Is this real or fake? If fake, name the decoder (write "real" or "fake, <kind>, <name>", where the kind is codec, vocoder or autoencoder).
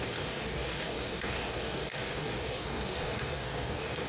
fake, codec, DAC